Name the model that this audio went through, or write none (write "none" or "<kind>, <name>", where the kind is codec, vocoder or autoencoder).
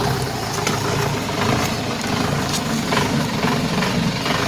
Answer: none